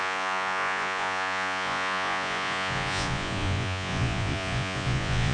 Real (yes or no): no